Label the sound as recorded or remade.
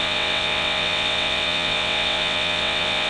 remade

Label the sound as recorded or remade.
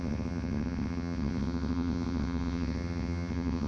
remade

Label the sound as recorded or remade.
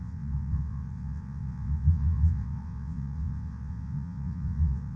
remade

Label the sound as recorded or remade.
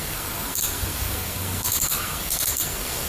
remade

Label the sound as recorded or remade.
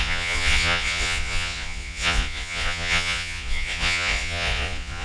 remade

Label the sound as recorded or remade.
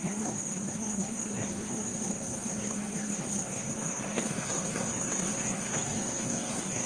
remade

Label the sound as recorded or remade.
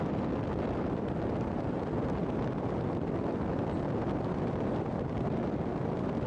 recorded